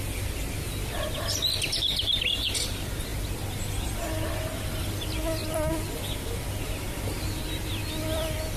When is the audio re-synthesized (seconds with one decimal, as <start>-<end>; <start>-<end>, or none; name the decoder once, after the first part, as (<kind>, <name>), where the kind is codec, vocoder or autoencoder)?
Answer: none